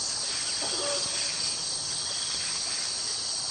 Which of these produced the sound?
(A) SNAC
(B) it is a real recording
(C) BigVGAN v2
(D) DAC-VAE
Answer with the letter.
B